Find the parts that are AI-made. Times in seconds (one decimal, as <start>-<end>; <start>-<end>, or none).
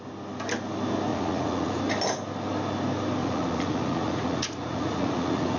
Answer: 1.1-1.8; 3.2-5.6